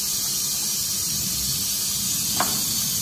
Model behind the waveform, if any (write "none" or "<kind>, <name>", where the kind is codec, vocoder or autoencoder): none